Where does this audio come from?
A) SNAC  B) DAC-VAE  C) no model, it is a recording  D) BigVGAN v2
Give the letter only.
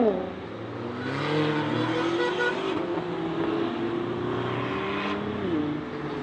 C